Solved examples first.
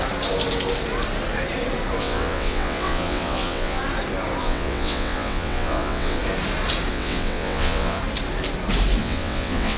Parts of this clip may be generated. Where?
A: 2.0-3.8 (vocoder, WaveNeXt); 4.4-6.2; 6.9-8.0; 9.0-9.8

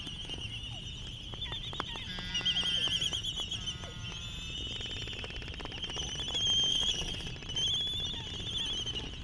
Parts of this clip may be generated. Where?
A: 6.7-7.3 (vocoder, WaveNeXt)